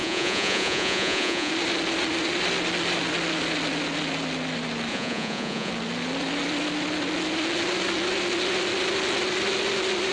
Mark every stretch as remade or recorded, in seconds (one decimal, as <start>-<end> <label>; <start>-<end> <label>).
0.0-1.5 remade; 1.5-4.9 recorded; 4.9-5.7 remade; 5.7-10.1 recorded